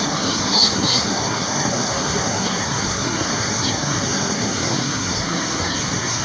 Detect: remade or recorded remade